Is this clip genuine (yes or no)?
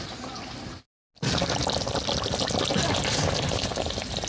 yes